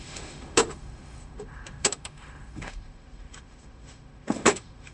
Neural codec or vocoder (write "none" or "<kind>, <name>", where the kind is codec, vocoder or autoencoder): autoencoder, DAC-VAE